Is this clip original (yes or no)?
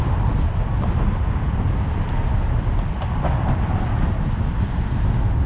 yes